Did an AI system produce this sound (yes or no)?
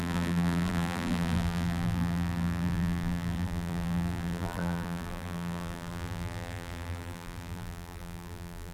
yes